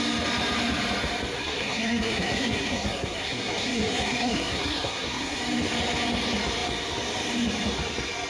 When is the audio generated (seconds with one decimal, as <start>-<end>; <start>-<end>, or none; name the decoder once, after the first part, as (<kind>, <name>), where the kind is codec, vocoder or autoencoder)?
1.4-5.4 (codec, SNAC)